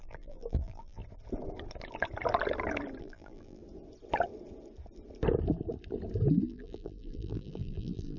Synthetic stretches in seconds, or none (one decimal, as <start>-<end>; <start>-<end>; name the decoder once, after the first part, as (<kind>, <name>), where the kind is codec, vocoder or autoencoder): 0.0-1.0 (vocoder, BigVGAN v2); 3.0-3.6; 6.3-8.2